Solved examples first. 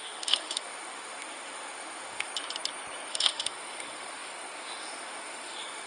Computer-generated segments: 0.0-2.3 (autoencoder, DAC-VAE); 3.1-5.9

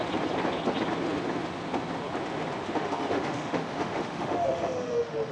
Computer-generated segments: 2.6-5.3 (autoencoder, DAC-VAE)